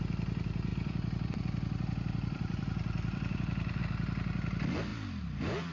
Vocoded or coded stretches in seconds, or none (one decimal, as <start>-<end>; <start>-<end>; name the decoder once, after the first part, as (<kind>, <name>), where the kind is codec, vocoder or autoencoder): 0.7-3.8 (vocoder, BigVGAN v2)